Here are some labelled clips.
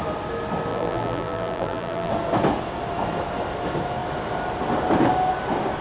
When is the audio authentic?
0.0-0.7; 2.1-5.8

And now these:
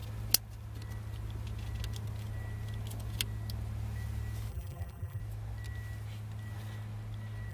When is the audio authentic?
0.0-4.5; 5.2-7.5

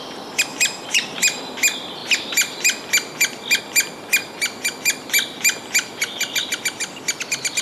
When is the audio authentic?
0.0-0.5; 1.4-7.6

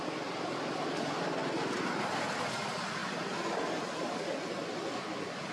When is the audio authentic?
0.0-5.5